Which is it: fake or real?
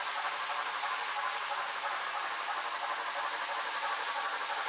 real